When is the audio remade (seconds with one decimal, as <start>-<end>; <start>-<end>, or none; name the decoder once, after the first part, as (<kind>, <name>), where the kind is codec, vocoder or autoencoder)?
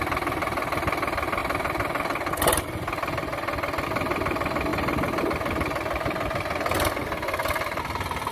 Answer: none